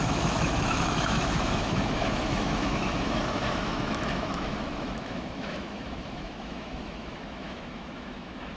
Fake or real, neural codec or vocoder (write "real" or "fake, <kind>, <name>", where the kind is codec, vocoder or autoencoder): fake, autoencoder, DAC-VAE